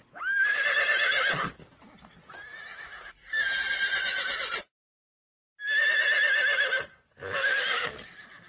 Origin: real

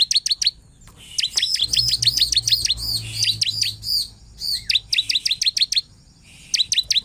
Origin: real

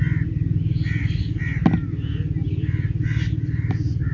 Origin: real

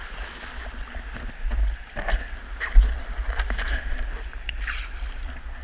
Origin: real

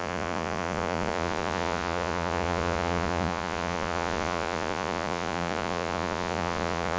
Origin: fake